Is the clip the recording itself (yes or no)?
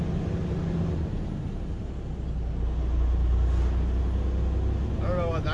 yes